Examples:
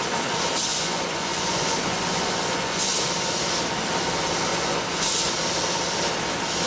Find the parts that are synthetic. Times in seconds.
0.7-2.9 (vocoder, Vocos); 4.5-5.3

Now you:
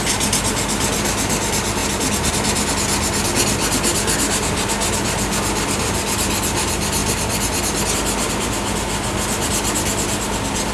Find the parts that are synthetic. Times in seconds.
none

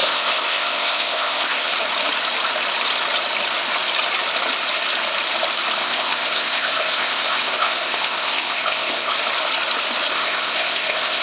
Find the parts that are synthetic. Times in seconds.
0.0-1.7 (codec, ZipCodec); 5.8-9.1; 10.1-11.2

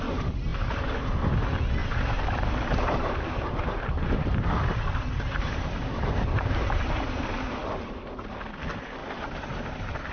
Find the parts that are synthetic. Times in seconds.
0.5-1.3 (vocoder, BigVGAN v2); 1.8-6.9; 9.0-10.1

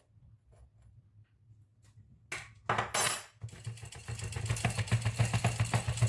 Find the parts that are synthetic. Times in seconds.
none